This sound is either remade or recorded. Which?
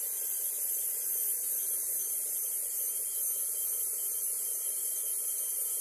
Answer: recorded